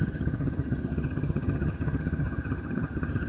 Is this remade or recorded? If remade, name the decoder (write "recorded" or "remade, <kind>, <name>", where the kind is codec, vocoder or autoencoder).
remade, vocoder, HiFi-GAN